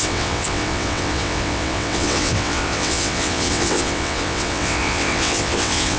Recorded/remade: remade